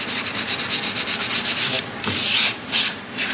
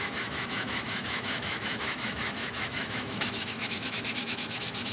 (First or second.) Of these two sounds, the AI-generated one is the second